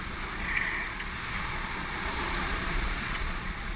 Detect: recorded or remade remade